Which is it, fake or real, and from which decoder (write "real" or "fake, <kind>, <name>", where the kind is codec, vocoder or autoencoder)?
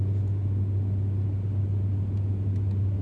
real